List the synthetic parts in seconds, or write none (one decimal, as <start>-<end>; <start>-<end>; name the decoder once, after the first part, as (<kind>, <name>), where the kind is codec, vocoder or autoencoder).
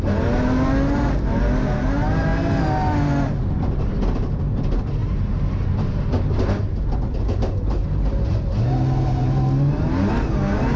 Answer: none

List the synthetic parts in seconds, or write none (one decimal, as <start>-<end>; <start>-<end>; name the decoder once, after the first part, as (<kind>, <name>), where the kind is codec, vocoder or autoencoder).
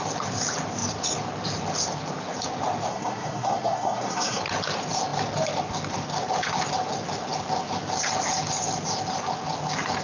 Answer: 2.9-4.4 (codec, SNAC)